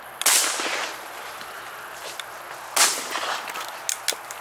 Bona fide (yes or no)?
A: yes